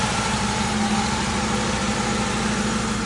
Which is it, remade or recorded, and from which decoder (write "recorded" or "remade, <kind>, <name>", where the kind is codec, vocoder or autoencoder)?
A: recorded